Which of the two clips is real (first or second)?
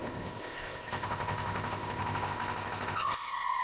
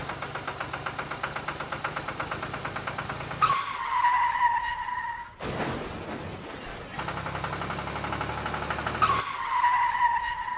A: second